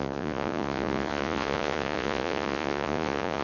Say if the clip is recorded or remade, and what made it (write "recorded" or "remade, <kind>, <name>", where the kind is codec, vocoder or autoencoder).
remade, vocoder, Vocos